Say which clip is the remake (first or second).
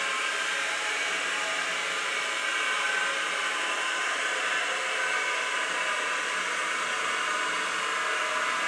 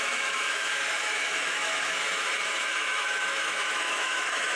second